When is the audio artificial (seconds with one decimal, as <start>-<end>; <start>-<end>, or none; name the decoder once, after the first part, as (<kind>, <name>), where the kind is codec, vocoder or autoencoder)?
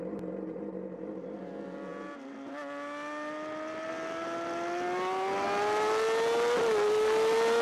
none